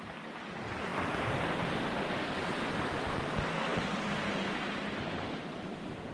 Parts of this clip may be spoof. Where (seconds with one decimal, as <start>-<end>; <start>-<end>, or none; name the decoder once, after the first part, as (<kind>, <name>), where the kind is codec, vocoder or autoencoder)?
none

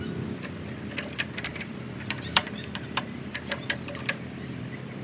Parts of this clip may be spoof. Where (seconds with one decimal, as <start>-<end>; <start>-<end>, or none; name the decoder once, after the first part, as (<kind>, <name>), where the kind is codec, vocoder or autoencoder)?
1.5-3.3 (vocoder, BigVGAN v2)